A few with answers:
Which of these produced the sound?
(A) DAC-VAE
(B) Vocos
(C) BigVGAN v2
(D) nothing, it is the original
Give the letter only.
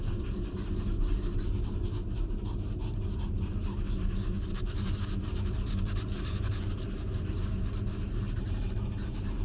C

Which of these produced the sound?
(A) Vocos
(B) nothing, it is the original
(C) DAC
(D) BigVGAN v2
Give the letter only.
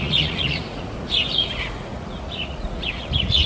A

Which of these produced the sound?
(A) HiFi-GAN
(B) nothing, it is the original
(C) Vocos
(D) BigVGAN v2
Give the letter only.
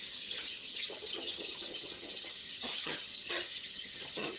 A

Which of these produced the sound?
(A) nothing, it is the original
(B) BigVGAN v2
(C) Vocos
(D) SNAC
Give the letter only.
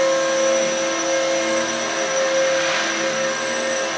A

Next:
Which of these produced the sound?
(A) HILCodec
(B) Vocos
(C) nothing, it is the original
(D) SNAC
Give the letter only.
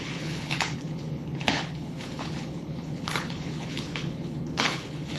A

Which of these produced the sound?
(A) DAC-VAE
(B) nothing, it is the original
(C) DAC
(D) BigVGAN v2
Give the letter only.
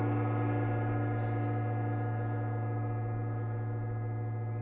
B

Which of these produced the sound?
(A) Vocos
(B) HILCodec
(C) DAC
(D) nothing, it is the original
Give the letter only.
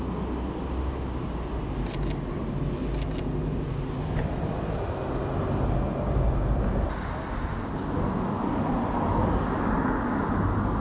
D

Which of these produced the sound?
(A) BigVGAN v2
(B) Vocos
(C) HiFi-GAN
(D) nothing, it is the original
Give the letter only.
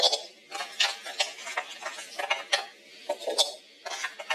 D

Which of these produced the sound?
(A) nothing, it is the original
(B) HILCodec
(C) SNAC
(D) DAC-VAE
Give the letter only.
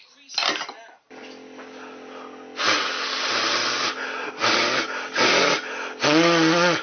A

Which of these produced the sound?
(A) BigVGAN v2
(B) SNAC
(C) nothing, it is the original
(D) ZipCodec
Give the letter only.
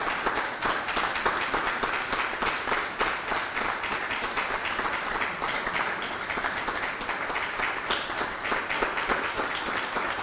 C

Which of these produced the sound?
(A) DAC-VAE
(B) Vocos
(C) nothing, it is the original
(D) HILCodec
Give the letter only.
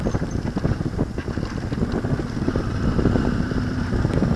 C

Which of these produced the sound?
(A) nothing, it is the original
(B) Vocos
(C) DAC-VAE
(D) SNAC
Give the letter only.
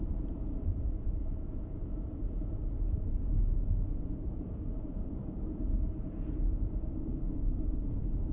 B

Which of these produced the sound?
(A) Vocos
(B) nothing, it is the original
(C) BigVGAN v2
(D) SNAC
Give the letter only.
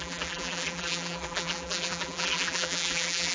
C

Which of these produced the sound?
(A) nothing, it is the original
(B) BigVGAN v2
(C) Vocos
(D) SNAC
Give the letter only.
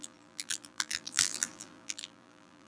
B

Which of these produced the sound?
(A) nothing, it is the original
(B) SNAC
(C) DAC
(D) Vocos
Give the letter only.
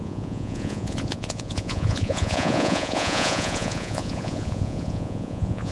D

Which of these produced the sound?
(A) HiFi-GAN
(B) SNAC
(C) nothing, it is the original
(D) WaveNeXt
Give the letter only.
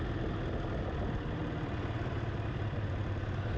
C